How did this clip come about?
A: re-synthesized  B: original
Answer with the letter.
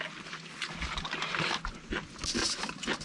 B